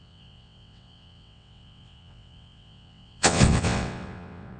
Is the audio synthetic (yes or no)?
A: yes